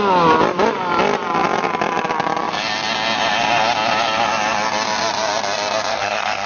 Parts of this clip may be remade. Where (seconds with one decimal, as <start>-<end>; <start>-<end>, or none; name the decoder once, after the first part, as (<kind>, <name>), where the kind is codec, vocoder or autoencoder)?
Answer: 5.9-6.5 (codec, SNAC)